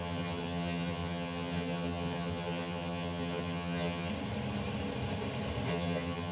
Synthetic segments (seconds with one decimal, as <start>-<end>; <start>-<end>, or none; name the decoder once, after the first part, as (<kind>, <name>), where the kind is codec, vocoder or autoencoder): 0.0-4.1 (vocoder, HiFi-GAN); 5.7-6.3